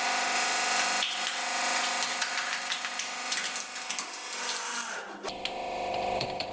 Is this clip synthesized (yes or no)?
no